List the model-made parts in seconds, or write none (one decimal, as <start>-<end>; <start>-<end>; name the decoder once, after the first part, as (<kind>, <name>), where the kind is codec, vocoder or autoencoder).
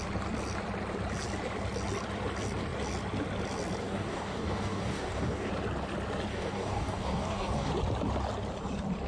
3.8-5.5 (codec, DAC); 6.3-7.7